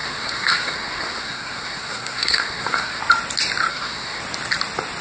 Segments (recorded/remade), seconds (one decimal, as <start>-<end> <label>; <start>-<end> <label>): 0.0-3.0 remade; 3.0-3.7 recorded; 3.7-4.2 remade; 4.2-5.0 recorded